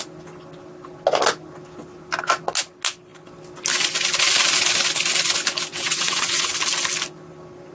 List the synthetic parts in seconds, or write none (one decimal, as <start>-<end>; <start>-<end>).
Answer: 5.7-6.5